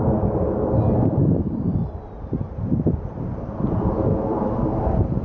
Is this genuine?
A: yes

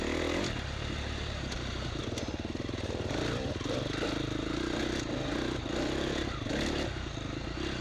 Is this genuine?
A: yes